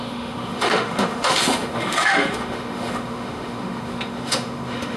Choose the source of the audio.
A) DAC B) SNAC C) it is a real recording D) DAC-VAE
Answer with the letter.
D